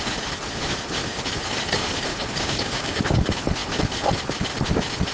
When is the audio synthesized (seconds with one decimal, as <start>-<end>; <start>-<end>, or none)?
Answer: 2.1-3.0